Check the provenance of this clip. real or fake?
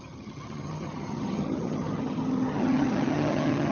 fake